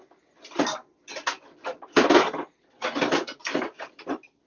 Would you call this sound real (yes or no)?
yes